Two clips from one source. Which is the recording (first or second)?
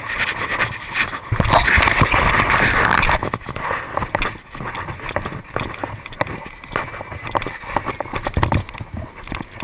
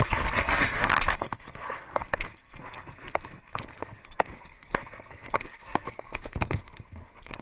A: first